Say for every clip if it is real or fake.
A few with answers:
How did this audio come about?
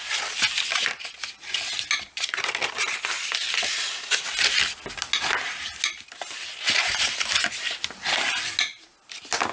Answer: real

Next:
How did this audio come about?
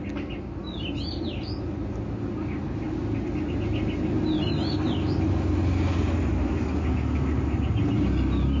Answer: real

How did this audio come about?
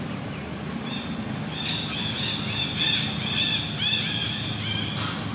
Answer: real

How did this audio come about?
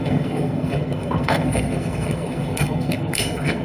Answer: fake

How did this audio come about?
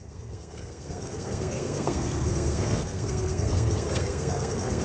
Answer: fake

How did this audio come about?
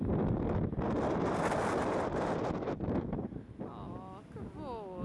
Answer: real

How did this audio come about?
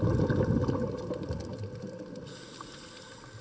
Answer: real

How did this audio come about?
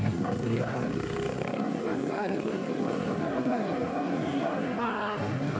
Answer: fake